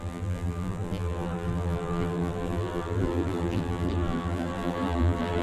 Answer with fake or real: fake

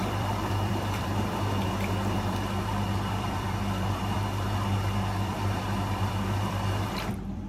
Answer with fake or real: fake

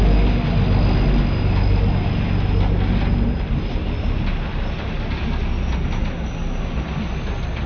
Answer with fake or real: real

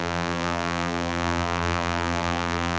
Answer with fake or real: fake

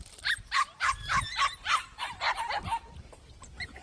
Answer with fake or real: fake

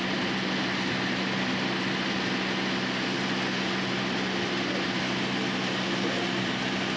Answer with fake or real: real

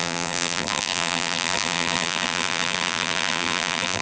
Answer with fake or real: fake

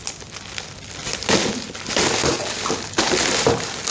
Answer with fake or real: real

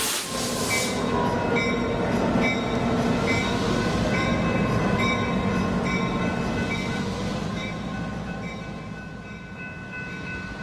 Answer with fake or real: real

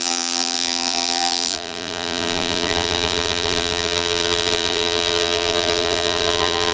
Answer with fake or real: fake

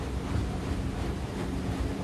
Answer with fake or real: fake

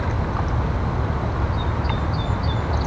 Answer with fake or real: real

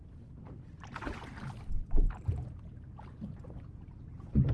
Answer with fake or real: real